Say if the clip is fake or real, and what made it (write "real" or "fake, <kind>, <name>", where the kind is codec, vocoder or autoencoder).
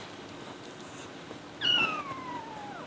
real